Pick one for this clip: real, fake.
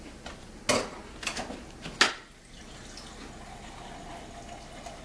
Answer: real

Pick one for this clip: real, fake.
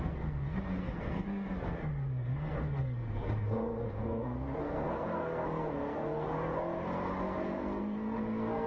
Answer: fake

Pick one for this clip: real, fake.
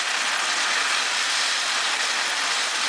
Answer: real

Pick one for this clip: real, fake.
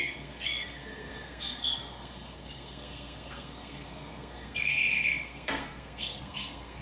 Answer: fake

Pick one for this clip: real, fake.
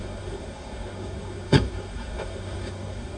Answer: fake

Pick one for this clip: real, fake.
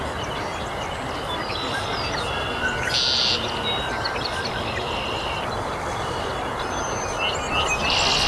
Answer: real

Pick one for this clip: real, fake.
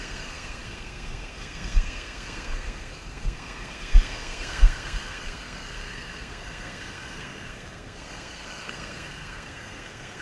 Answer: fake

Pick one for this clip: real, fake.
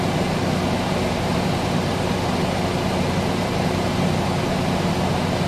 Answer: real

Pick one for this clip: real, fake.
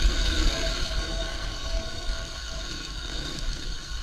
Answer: fake